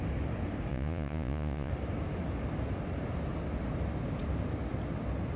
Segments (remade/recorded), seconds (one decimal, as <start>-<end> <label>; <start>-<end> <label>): 0.0-0.7 recorded; 0.7-1.7 remade; 1.7-5.4 recorded